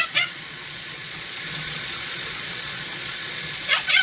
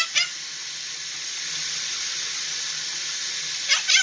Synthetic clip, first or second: first